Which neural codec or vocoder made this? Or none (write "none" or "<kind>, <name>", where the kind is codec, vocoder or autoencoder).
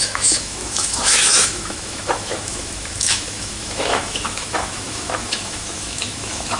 autoencoder, DAC-VAE